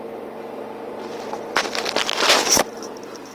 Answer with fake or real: real